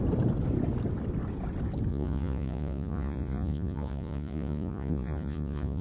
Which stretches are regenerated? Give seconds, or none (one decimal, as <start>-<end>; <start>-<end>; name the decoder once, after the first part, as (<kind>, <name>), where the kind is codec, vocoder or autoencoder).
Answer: 1.9-5.8 (vocoder, Vocos)